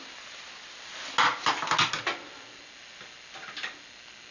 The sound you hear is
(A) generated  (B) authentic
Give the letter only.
B